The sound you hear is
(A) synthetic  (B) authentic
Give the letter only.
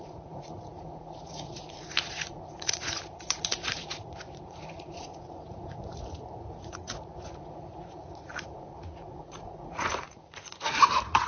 A